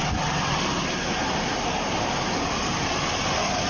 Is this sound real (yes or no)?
yes